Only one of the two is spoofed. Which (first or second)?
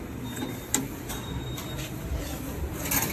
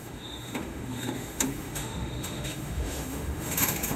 second